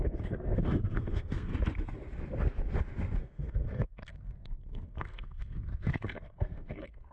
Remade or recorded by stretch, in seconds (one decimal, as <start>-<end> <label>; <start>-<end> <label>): 0.0-1.5 remade; 1.5-3.2 recorded; 3.2-7.1 remade